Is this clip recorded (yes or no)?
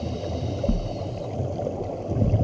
yes